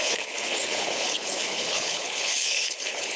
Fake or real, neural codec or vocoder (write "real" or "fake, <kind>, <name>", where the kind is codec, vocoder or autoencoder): fake, codec, HILCodec